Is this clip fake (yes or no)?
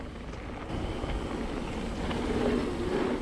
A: no